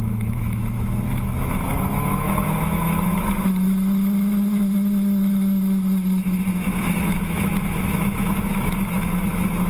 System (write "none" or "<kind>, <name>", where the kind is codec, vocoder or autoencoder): autoencoder, DAC-VAE